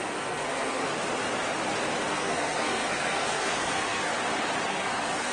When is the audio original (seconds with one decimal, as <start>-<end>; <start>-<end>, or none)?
0.8-2.1; 4.1-4.7